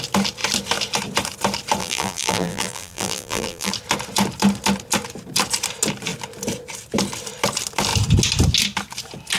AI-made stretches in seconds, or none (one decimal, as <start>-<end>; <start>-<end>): 1.8-3.7